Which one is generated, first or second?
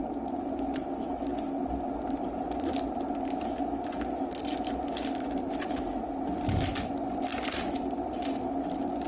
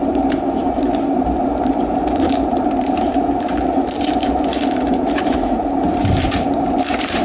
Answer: second